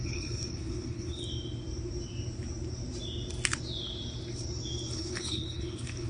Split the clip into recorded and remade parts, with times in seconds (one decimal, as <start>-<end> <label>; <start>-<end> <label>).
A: 0.0-1.2 remade; 1.2-4.9 recorded; 4.9-6.1 remade